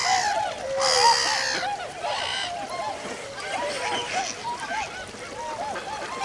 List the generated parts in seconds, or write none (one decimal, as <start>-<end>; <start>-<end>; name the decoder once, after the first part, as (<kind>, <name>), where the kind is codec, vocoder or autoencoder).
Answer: 2.3-4.2 (vocoder, BigVGAN v2)